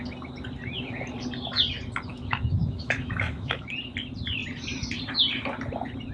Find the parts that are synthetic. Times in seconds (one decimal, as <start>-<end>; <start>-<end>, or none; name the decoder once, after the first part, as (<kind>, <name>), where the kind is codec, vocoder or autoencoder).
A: 2.1-3.7 (autoencoder, DAC-VAE)